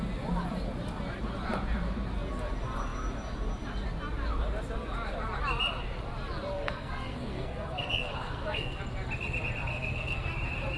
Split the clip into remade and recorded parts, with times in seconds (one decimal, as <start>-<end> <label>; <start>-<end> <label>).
0.0-6.5 recorded; 6.5-8.8 remade; 8.8-9.7 recorded; 9.7-10.3 remade; 10.3-10.8 recorded